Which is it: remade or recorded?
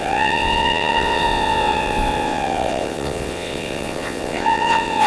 remade